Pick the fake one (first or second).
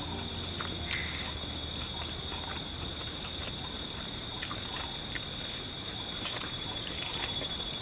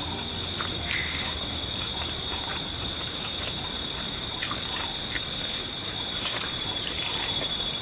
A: second